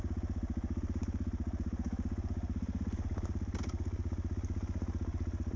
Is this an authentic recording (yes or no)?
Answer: yes